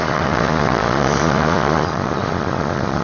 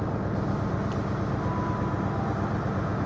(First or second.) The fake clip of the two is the first